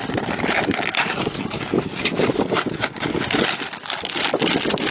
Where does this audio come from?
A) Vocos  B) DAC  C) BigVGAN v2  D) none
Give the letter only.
D